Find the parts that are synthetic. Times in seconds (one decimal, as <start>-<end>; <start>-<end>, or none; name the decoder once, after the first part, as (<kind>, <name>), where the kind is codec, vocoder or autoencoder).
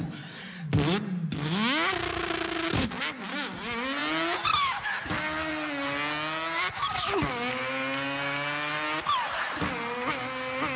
none